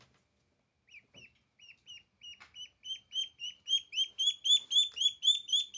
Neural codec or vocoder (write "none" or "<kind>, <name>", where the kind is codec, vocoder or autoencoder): none